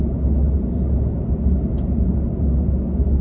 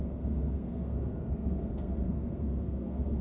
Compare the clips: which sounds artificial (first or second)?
second